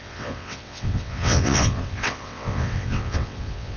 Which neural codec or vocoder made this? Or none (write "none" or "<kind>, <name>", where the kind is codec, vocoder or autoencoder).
vocoder, WaveNeXt